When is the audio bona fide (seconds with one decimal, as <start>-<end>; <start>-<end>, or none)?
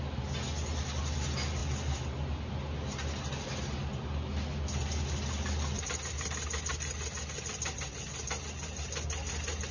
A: 0.0-9.7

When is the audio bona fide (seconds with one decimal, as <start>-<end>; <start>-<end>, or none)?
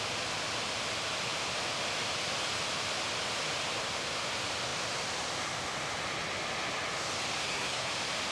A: 0.0-7.4; 7.9-8.3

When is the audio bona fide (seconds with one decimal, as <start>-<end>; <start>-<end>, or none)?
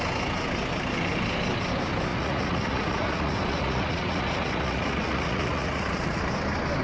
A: 0.0-2.1; 6.2-6.8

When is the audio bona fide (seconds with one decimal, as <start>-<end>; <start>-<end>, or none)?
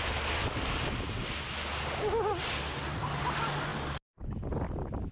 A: 0.0-5.1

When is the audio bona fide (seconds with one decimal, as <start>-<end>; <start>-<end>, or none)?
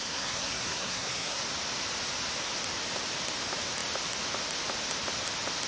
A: 1.4-5.7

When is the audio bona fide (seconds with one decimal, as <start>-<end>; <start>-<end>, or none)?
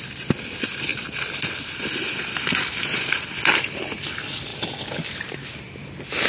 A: 0.0-6.3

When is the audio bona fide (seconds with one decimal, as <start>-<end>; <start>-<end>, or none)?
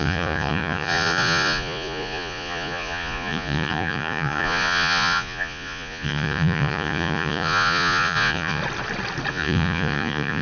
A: 8.6-9.3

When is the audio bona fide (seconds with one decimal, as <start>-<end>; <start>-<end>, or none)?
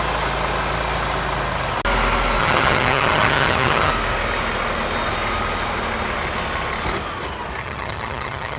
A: 0.0-2.4; 3.9-7.6